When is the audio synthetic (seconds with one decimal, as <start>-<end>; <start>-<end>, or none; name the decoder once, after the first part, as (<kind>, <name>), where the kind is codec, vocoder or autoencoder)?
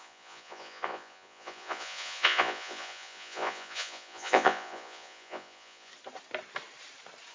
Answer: 0.0-5.9 (vocoder, Vocos)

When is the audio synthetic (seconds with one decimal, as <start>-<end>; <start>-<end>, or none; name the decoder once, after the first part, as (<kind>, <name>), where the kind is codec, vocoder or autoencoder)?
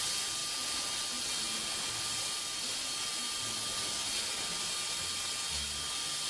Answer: none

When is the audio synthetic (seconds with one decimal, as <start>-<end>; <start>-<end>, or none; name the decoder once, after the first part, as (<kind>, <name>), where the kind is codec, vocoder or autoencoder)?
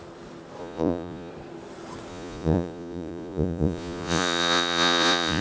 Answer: 0.6-1.3 (vocoder, Vocos); 2.1-5.4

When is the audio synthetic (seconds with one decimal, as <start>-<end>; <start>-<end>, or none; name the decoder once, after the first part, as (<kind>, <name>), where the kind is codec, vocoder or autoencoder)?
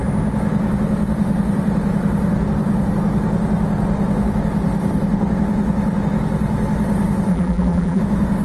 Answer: 7.3-8.0 (vocoder, BigVGAN v2)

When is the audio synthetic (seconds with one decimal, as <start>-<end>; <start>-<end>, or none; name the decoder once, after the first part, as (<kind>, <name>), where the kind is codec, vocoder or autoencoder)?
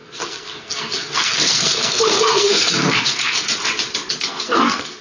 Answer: 0.0-3.5 (codec, SNAC); 4.2-5.0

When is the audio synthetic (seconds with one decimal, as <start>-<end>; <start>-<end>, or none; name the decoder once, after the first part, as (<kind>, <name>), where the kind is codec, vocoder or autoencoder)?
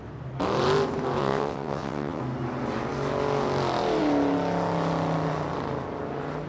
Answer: 1.2-2.2 (vocoder, WaveNeXt)